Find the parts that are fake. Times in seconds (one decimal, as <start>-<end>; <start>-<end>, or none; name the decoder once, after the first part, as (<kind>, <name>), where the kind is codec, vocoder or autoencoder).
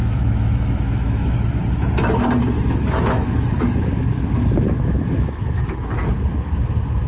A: 0.0-1.3 (autoencoder, DAC-VAE); 2.4-6.0